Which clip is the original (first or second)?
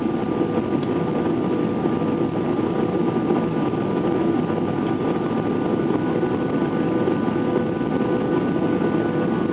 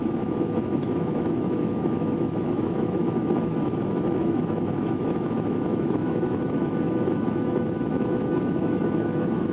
first